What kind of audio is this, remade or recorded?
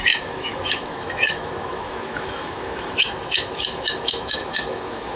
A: remade